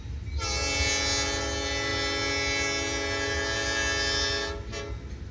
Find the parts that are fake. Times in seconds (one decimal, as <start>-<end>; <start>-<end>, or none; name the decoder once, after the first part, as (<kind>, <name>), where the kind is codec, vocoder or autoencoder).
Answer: none